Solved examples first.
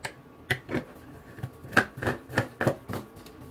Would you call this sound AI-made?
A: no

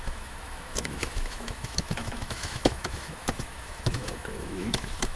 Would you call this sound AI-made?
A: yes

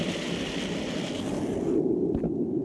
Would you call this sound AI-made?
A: no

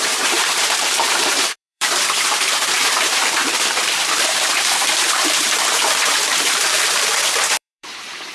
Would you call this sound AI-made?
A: yes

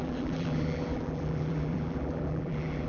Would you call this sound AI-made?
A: yes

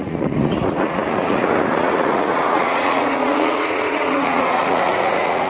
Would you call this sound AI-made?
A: yes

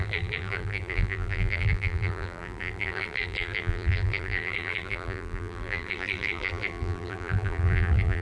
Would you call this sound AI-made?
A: yes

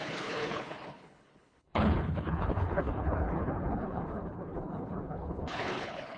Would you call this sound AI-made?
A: yes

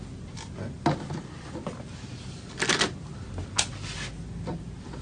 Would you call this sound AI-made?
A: no